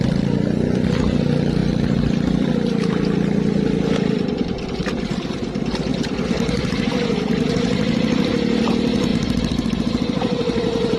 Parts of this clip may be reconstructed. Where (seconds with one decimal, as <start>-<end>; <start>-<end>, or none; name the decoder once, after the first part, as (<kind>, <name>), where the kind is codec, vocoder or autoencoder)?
1.6-2.9 (vocoder, BigVGAN v2); 5.9-7.5; 9.1-11.0